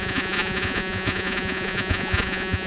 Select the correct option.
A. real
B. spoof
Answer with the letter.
B